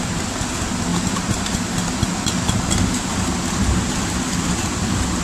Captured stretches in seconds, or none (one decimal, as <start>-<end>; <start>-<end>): 0.0-0.9; 1.6-5.2